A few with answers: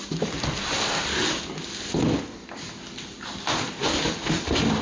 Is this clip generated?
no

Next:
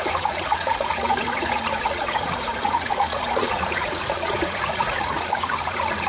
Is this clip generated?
yes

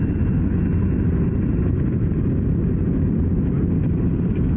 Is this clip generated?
no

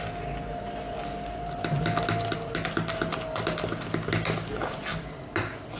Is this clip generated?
no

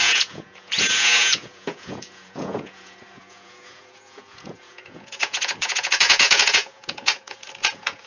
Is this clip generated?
yes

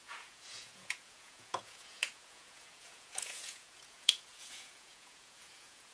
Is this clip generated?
yes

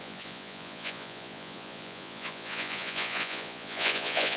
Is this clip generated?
yes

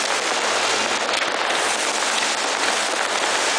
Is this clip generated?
no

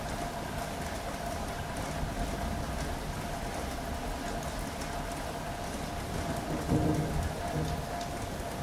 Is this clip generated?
no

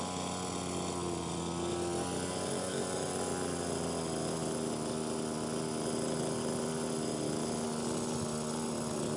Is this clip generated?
no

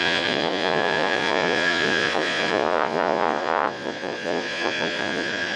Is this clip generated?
yes